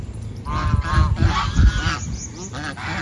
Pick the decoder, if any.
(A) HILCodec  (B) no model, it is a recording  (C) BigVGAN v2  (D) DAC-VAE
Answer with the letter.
B